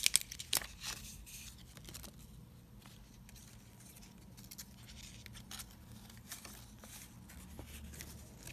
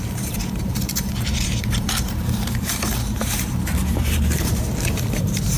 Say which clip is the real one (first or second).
first